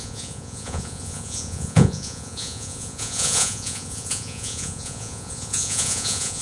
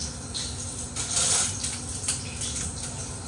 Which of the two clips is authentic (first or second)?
second